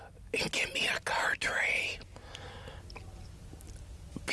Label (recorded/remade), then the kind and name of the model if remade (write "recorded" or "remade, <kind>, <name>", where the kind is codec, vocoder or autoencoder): recorded